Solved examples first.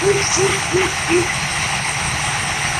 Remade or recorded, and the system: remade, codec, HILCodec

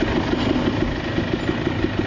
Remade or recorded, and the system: recorded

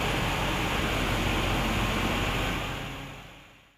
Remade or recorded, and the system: recorded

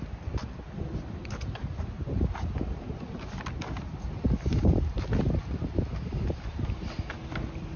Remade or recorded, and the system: recorded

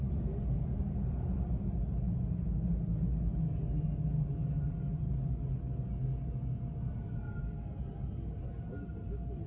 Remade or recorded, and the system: recorded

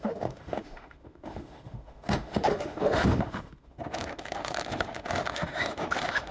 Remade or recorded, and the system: remade, autoencoder, DAC-VAE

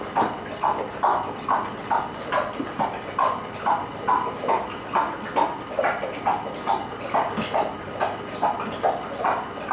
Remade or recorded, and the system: recorded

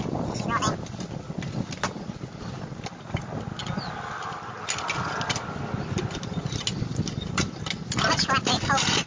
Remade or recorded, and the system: recorded